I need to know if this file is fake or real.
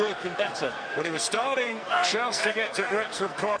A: fake